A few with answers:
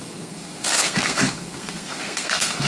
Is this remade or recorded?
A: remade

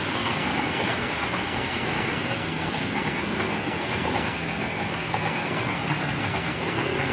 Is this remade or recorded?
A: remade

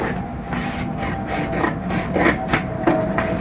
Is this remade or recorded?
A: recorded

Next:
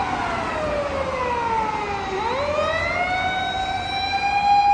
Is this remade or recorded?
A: recorded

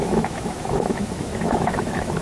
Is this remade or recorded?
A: remade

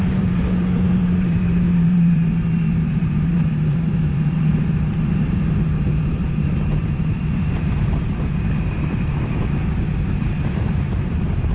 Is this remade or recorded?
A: remade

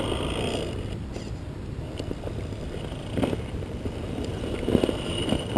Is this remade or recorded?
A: remade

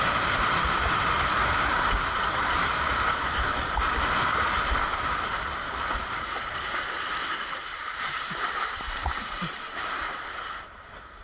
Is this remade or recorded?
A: remade